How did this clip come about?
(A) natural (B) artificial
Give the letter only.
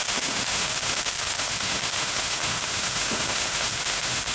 B